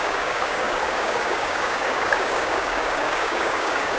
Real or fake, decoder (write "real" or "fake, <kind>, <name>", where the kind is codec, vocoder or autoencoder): fake, codec, DAC